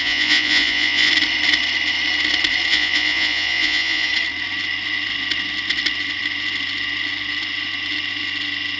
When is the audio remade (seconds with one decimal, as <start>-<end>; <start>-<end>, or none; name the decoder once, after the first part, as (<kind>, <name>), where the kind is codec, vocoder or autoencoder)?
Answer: 0.0-1.1 (vocoder, Vocos); 2.7-4.1